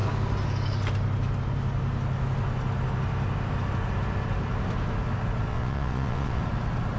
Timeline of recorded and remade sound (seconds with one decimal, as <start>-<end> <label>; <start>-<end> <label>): 0.0-5.5 recorded; 5.5-6.4 remade; 6.4-7.0 recorded